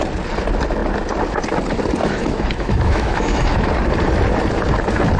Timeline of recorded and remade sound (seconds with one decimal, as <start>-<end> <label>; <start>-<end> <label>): 0.0-2.0 recorded; 2.0-3.7 remade; 3.7-5.2 recorded